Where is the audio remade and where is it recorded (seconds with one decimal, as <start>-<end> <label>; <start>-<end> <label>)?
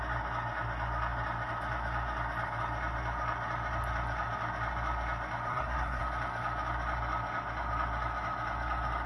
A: 0.0-5.5 recorded; 5.5-6.0 remade; 6.0-9.1 recorded